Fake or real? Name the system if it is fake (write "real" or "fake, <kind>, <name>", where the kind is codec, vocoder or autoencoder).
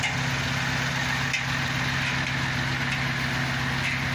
real